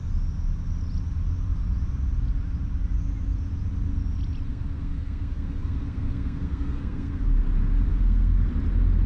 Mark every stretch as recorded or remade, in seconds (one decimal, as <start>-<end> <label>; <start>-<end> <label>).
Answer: 0.0-4.5 recorded; 4.5-7.4 remade; 7.4-7.9 recorded; 7.9-8.5 remade; 8.5-9.1 recorded